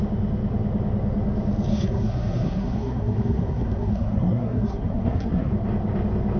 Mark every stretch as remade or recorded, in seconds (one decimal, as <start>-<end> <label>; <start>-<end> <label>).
0.0-1.7 recorded; 1.7-5.5 remade; 5.5-6.4 recorded